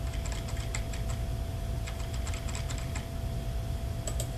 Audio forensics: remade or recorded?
recorded